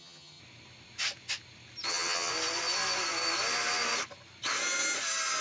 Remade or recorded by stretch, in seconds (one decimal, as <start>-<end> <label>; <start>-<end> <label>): 0.0-0.4 remade; 0.4-1.9 recorded; 1.9-2.3 remade; 2.3-5.4 recorded